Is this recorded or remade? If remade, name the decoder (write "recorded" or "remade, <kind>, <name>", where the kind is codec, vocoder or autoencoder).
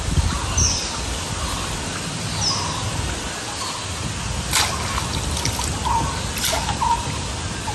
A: recorded